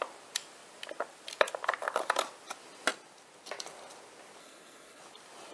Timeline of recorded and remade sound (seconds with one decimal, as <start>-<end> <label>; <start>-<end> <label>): 0.0-4.4 recorded; 4.4-5.0 remade; 5.0-5.5 recorded